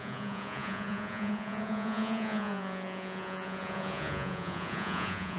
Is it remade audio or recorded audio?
remade